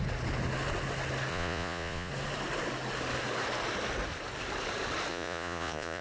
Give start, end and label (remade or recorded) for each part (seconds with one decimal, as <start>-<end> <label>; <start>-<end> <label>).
0.0-1.3 recorded; 1.3-2.1 remade; 2.1-5.1 recorded; 5.1-6.0 remade